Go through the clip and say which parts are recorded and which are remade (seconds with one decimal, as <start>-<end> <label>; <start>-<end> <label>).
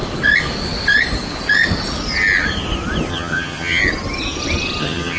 0.0-3.1 recorded; 3.1-3.8 remade; 3.8-4.8 recorded; 4.8-5.2 remade